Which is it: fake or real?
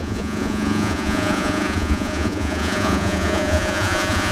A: fake